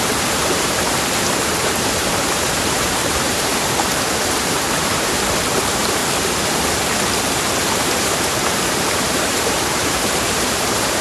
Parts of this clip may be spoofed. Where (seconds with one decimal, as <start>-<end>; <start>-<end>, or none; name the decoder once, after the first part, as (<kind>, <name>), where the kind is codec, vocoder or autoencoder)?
0.0-6.0 (vocoder, BigVGAN v2); 7.3-11.0